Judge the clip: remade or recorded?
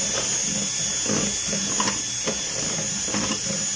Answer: recorded